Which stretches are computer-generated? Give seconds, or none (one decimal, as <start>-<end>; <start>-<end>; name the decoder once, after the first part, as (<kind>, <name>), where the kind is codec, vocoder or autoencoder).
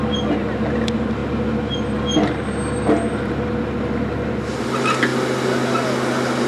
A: none